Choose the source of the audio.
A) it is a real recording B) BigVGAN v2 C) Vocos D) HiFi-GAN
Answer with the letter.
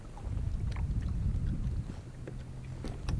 A